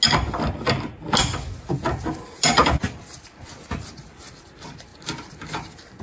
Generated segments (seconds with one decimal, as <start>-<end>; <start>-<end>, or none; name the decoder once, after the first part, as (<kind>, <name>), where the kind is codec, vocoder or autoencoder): 2.6-3.6 (vocoder, BigVGAN v2)